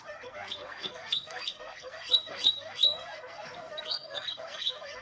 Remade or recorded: remade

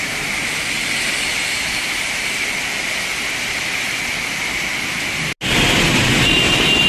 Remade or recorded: recorded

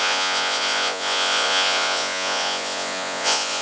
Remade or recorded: remade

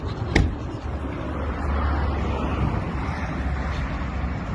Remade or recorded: recorded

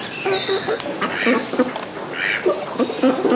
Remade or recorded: recorded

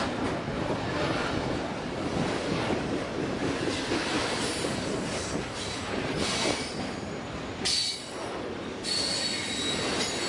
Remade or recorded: recorded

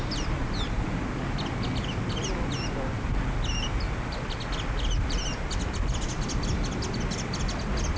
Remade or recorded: recorded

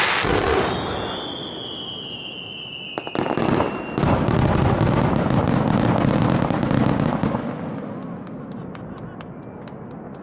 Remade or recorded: recorded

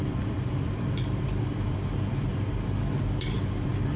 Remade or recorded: remade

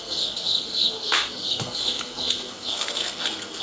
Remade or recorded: remade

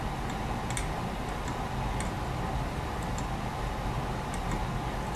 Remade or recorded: recorded